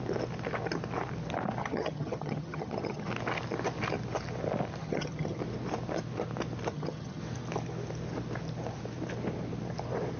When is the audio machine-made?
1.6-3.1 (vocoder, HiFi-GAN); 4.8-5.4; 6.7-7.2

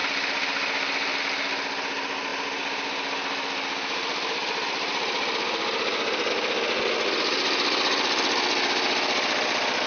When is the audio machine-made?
none

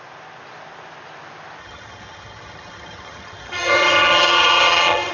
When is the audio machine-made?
1.6-5.1 (vocoder, HiFi-GAN)

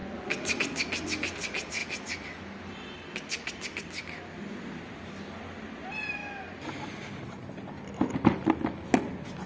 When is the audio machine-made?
none

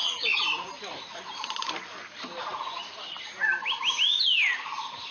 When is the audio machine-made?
none

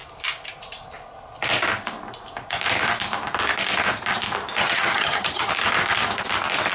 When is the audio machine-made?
4.6-5.5 (vocoder, HiFi-GAN)

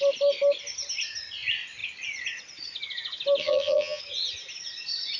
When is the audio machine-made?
3.4-4.0 (vocoder, HiFi-GAN)